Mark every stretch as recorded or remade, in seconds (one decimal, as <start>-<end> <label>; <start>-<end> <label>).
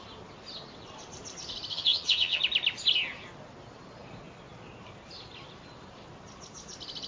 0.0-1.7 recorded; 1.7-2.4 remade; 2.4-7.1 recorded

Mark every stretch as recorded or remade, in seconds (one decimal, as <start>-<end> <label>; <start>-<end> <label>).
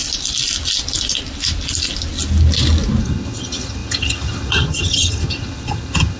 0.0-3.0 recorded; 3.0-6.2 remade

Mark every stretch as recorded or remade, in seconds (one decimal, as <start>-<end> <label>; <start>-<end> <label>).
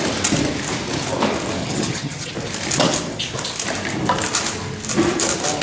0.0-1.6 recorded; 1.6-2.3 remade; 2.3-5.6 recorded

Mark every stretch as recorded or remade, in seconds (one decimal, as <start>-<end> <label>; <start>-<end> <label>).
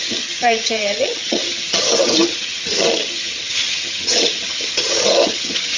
0.0-5.8 remade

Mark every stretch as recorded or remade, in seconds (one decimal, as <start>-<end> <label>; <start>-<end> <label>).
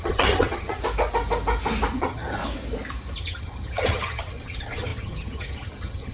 0.0-0.8 remade; 0.8-2.0 recorded; 2.0-2.4 remade; 2.4-3.2 recorded; 3.2-6.1 remade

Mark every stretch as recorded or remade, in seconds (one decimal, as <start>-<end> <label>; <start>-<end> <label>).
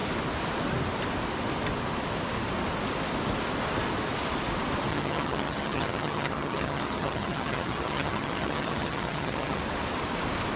0.0-4.9 recorded; 4.9-9.6 remade; 9.6-10.6 recorded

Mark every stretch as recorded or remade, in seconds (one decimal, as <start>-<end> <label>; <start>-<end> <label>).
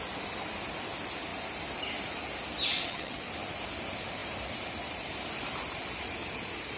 0.0-2.8 recorded; 2.8-3.3 remade; 3.3-6.8 recorded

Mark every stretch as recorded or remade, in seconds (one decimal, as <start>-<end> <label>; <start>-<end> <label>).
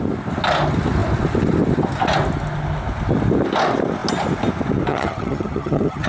0.0-4.9 recorded; 4.9-6.1 remade